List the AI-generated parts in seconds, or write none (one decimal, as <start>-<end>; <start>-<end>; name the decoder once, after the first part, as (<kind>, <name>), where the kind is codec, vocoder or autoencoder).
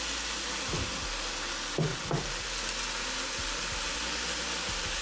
none